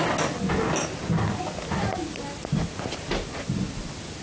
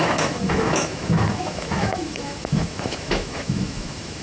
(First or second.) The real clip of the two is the first